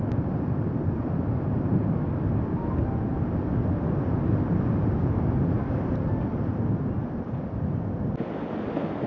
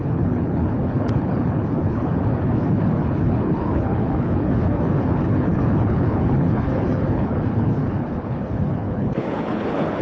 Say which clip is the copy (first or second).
second